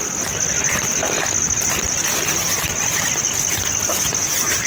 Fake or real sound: real